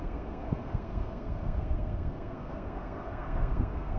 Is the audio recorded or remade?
remade